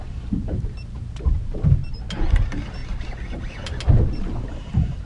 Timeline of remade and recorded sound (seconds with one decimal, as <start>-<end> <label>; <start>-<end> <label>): 0.0-1.8 remade; 1.8-2.3 recorded; 2.3-2.8 remade; 2.8-4.1 recorded; 4.1-5.1 remade